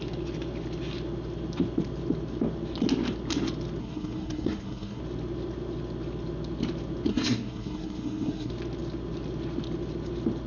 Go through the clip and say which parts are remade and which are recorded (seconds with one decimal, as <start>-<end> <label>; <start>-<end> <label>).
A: 0.0-3.8 recorded; 3.8-5.0 remade; 5.0-7.1 recorded; 7.1-8.5 remade; 8.5-10.5 recorded